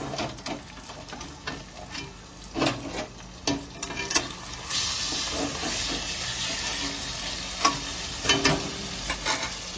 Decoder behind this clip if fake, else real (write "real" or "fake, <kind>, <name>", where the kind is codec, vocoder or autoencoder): real